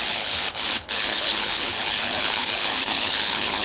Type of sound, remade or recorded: remade